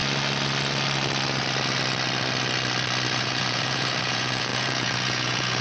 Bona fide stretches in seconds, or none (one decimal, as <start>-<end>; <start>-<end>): 0.0-3.1